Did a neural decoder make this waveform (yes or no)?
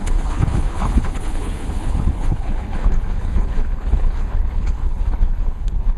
yes